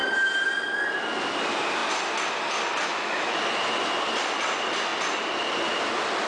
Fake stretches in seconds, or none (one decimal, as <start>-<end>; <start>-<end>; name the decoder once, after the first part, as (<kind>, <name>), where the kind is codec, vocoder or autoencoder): 2.9-3.4 (autoencoder, DAC-VAE)